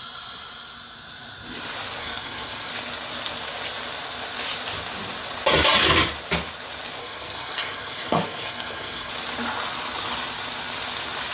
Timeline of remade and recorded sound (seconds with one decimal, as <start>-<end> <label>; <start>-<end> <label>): 0.0-2.0 recorded; 2.0-2.7 remade; 2.7-7.0 recorded; 7.0-9.1 remade; 9.1-11.3 recorded